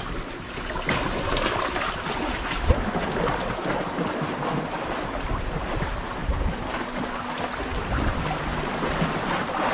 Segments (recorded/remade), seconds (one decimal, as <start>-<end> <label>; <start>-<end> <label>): 0.0-6.2 recorded; 6.2-6.8 remade; 6.8-7.7 recorded; 7.7-8.7 remade; 8.7-9.7 recorded